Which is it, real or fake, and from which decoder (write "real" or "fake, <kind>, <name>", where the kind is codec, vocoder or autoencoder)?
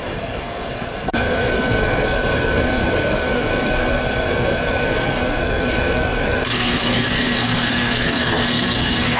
fake, codec, SNAC